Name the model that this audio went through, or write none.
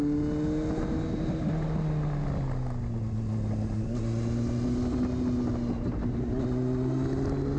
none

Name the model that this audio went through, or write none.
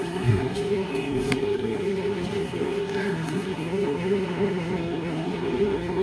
codec, SNAC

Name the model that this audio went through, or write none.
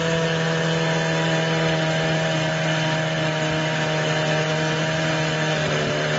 none